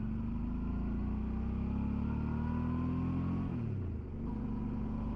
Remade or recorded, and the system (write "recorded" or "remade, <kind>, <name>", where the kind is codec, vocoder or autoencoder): recorded